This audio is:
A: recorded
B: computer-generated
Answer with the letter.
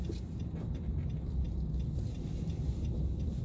A